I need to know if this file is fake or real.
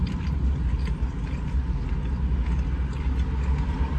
real